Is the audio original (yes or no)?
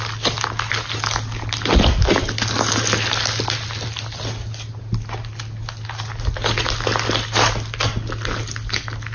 yes